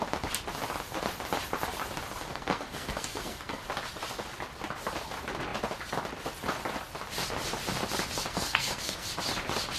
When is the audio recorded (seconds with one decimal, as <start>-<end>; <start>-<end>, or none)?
0.0-2.3; 3.6-8.3; 9.1-9.8